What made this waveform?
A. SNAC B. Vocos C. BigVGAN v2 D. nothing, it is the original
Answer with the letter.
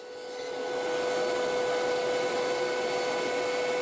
D